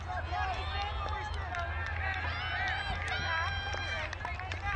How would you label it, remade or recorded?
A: recorded